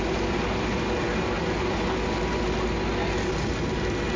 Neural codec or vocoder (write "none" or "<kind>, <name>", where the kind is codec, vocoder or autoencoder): none